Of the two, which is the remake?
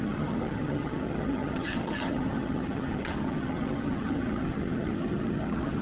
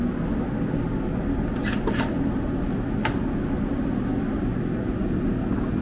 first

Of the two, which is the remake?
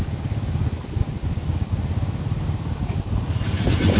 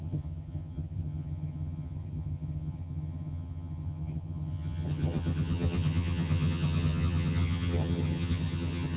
second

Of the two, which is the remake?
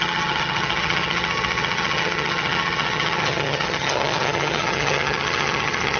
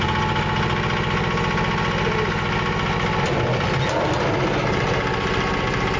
first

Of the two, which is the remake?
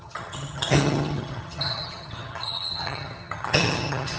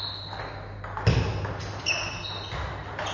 first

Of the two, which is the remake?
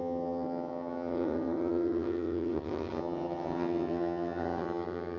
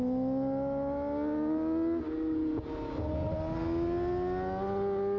first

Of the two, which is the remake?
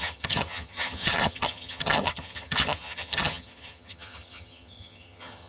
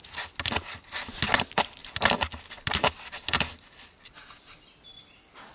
first